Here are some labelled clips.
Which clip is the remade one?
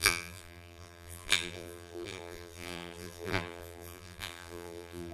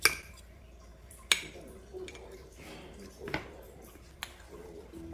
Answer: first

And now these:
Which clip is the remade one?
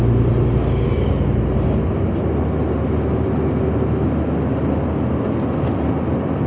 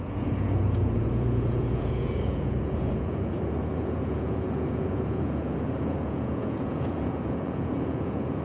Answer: second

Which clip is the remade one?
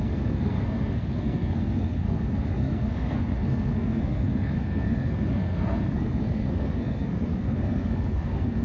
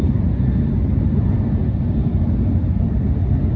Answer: first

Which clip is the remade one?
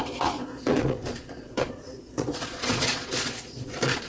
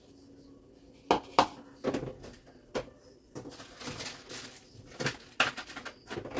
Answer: first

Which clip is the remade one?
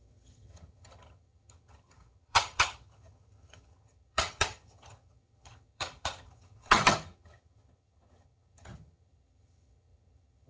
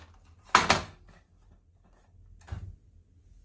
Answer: first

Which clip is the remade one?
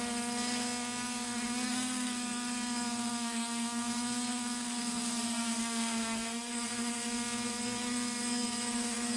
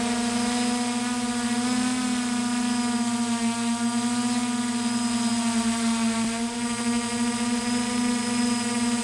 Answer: first